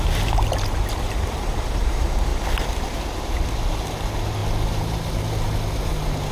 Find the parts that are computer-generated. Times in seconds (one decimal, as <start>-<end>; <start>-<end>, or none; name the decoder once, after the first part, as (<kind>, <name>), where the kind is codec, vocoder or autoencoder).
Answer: none